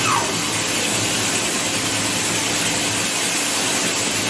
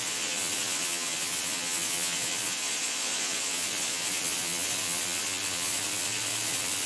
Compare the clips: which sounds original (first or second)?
first